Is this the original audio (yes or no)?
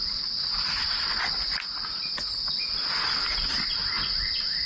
yes